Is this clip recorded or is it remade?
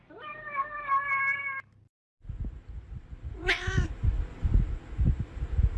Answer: recorded